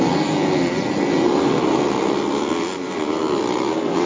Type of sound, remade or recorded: recorded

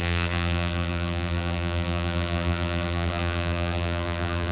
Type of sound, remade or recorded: remade